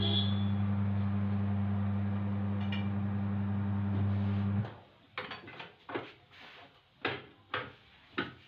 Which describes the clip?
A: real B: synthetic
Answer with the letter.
A